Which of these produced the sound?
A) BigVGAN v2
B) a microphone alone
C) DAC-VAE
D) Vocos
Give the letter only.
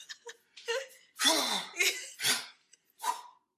B